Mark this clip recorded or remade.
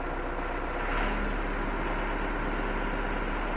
recorded